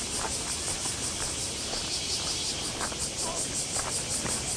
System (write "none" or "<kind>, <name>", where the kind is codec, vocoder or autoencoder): vocoder, BigVGAN v2